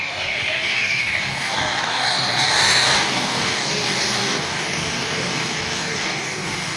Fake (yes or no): yes